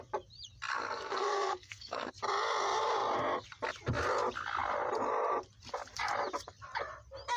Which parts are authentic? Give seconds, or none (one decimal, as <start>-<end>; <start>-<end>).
0.0-0.7; 2.1-7.4